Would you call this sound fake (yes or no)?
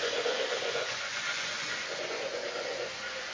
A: yes